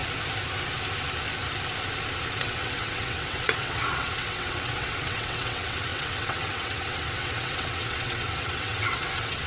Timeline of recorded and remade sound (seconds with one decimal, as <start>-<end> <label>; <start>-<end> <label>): 0.0-2.4 recorded; 2.4-9.5 remade